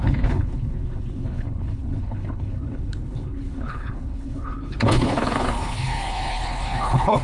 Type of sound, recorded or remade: remade